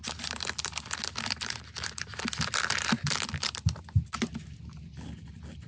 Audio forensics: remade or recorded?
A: recorded